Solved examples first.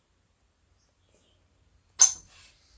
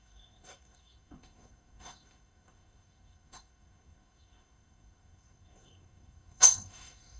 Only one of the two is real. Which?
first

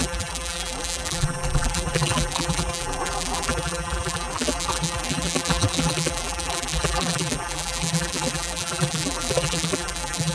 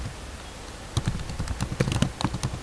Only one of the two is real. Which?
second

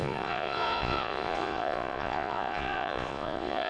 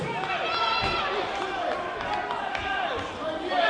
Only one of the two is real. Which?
second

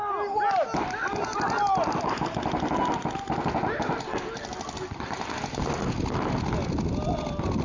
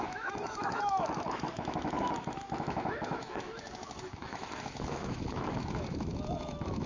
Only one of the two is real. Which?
first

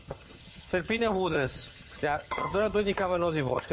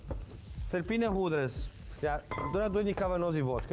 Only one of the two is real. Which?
second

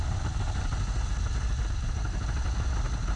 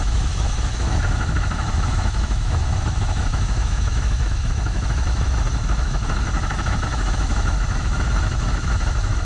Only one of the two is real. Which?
first